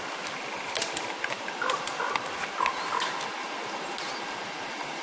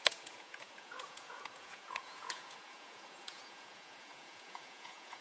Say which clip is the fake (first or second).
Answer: second